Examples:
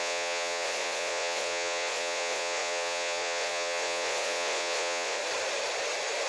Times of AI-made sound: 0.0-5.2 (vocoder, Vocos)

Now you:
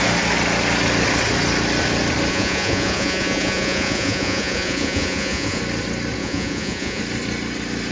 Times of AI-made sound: 2.3-5.6 (vocoder, Vocos); 6.2-7.0

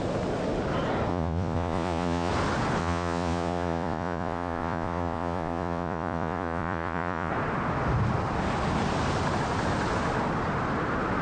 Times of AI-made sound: 1.1-2.3 (vocoder, Vocos); 2.8-7.3

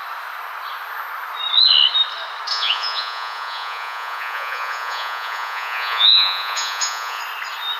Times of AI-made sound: 2.5-7.2 (vocoder, Vocos)